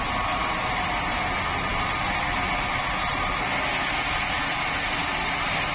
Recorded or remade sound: recorded